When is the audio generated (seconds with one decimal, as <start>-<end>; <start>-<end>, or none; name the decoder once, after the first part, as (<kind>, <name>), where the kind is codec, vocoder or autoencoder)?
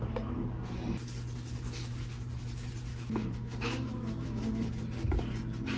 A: 2.9-4.7 (autoencoder, DAC-VAE)